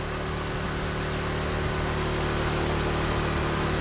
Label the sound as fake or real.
real